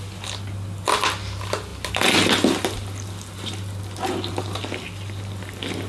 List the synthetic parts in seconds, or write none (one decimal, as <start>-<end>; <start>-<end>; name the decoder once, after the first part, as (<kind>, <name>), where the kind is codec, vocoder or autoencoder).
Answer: none

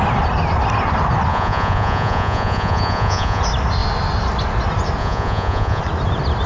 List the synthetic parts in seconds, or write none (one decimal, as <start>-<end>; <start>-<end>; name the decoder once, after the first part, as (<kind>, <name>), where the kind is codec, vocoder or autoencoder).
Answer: 1.3-3.4 (vocoder, Vocos); 5.0-5.8